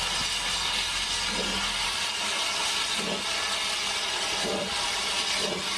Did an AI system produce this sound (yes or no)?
no